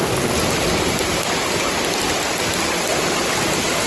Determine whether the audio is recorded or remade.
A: recorded